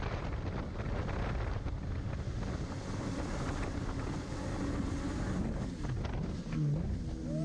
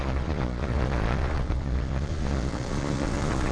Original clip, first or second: first